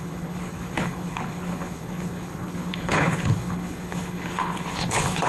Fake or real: fake